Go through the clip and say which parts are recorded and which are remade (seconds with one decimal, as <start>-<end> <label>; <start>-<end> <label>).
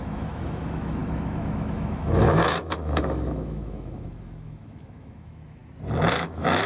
0.0-5.6 remade; 5.6-6.1 recorded; 6.1-6.7 remade